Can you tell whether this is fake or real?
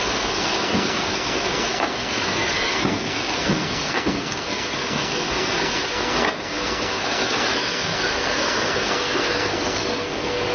fake